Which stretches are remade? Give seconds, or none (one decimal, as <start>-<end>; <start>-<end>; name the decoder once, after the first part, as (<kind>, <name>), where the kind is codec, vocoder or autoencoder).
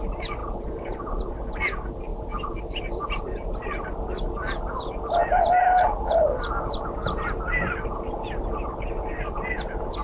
0.4-1.0 (vocoder, BigVGAN v2)